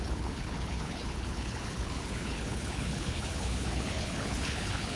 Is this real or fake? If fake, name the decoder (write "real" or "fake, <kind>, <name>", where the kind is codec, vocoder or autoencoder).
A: fake, codec, HILCodec